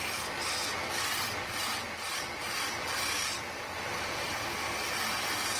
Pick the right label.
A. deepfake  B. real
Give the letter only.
B